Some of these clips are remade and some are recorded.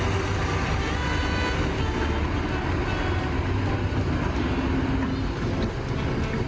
recorded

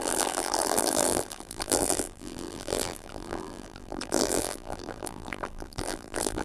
remade